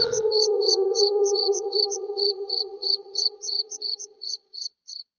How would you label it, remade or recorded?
remade